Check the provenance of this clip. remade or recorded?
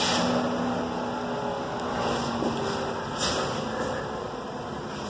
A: recorded